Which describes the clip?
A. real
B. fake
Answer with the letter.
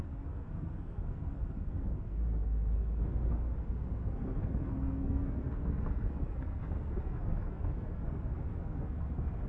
B